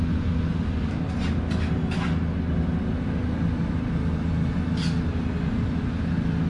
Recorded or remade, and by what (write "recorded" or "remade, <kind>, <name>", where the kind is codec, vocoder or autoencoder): recorded